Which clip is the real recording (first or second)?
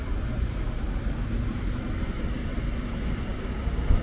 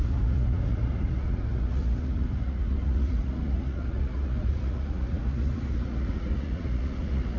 first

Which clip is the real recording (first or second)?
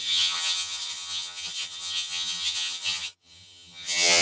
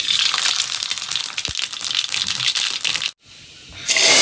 second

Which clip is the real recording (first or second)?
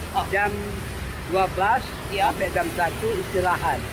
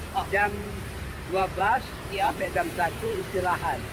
first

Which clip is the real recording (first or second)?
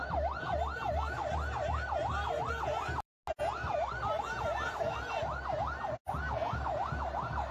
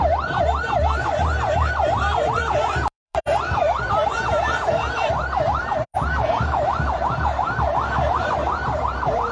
first